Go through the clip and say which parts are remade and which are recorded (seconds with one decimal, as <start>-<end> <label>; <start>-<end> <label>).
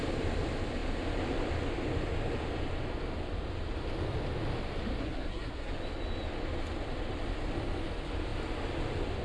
0.0-5.0 recorded; 5.0-5.7 remade; 5.7-9.2 recorded